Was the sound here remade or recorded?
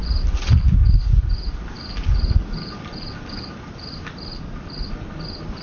recorded